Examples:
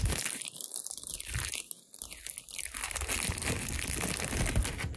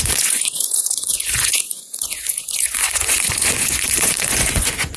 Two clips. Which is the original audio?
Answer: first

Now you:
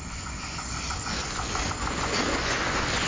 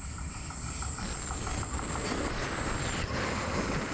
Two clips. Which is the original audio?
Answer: second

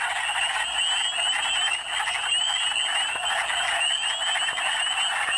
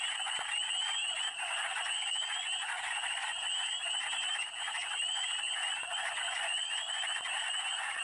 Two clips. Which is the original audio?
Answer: first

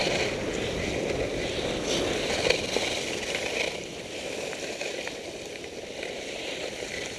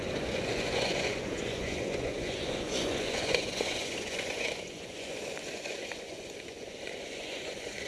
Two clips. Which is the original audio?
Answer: first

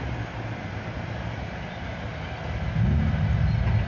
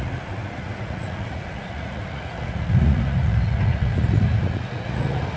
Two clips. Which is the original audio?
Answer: first